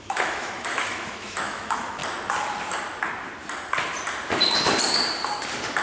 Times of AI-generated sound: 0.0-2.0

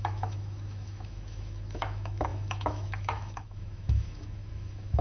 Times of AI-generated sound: 0.0-5.0